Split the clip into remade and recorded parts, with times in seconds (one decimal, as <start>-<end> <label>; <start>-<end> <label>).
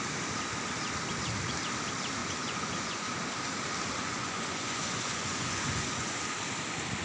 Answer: 0.0-2.2 recorded; 2.2-3.1 remade; 3.1-4.0 recorded; 4.0-6.2 remade; 6.2-7.0 recorded